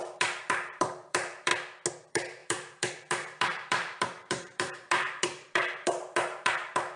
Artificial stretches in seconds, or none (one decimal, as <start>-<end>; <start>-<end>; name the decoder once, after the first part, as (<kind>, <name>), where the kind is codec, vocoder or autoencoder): 0.0-1.5 (vocoder, BigVGAN v2); 2.0-7.0